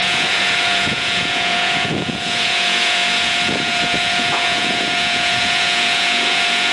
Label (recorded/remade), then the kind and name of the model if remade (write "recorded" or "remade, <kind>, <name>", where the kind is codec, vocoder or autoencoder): remade, vocoder, Vocos